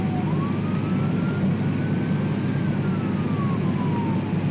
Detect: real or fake real